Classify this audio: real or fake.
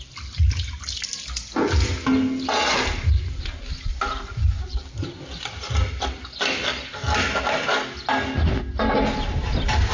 real